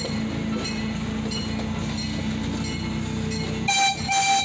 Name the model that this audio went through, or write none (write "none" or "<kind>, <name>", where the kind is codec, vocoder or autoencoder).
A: none